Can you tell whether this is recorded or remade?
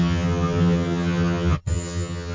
remade